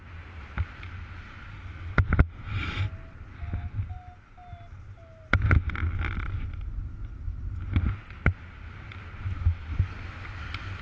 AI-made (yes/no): no